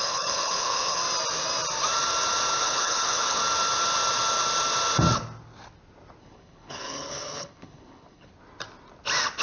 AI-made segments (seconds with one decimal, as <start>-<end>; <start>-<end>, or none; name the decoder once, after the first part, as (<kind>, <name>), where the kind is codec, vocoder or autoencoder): 0.0-1.0 (codec, HILCodec); 2.6-3.4; 6.2-8.3